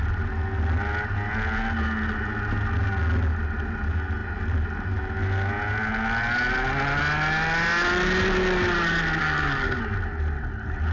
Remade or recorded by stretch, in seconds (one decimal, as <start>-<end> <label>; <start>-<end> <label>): 0.0-9.2 recorded; 9.2-9.8 remade; 9.8-10.9 recorded